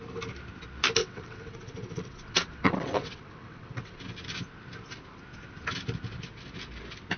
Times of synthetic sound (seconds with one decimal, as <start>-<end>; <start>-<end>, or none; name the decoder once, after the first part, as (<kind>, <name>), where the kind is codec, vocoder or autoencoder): 1.0-4.0 (vocoder, WaveNeXt)